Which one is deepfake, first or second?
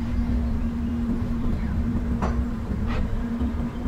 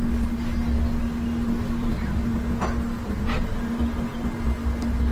first